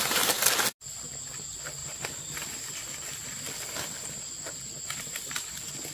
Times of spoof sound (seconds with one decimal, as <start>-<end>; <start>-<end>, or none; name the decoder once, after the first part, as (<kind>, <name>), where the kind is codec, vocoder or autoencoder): none